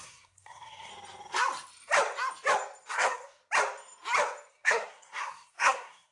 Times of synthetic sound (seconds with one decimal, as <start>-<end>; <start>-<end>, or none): 0.0-0.9; 2.9-3.4; 4.5-6.1